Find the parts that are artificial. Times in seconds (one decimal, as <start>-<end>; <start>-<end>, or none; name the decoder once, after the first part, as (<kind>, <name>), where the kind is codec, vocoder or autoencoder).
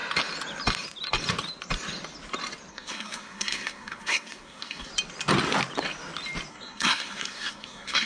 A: 2.7-4.9 (codec, SNAC); 6.5-8.1